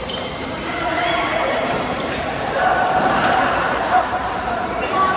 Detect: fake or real fake